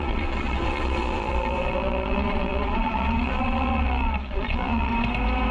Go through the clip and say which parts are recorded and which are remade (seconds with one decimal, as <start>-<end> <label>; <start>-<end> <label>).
0.0-4.9 remade; 4.9-5.5 recorded